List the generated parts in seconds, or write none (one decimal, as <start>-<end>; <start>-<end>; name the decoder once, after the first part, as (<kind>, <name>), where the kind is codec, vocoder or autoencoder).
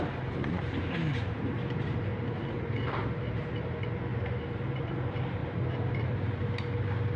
0.0-5.4 (vocoder, BigVGAN v2); 5.9-6.4